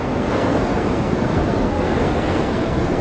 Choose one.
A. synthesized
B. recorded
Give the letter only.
A